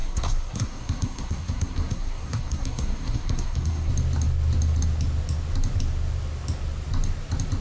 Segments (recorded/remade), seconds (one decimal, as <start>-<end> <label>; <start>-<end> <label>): 0.0-3.9 remade; 3.9-7.6 recorded